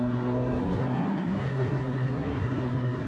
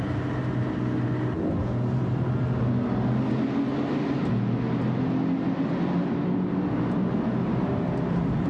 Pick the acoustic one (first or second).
second